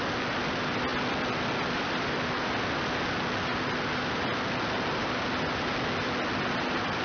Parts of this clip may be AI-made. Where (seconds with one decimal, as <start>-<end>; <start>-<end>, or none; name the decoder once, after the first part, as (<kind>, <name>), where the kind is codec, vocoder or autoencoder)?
none